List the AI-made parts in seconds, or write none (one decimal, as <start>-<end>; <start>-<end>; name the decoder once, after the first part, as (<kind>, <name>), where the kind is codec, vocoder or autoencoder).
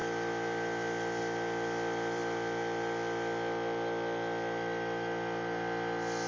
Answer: 0.0-2.2 (vocoder, BigVGAN v2)